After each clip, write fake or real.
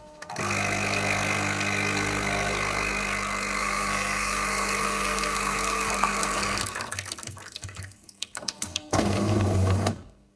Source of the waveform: fake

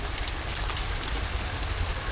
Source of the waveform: real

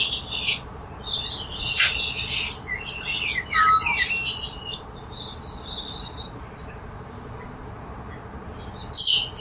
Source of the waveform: real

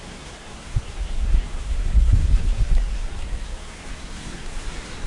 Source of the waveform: fake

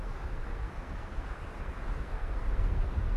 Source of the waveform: fake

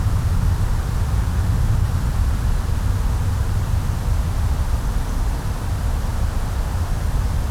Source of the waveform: real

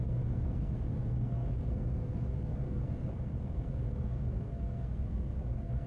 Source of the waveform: fake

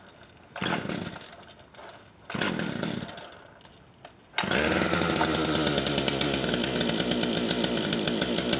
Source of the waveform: real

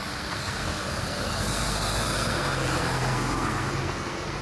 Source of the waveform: fake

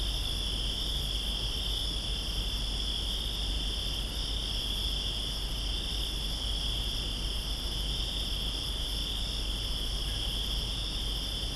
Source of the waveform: real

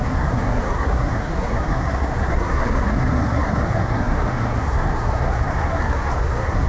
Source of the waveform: fake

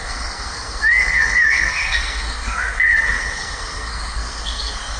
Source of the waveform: fake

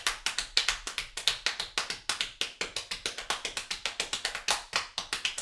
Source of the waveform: real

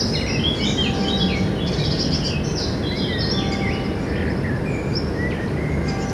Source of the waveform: real